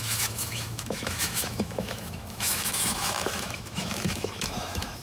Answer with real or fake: fake